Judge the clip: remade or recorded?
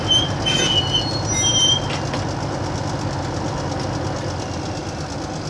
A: recorded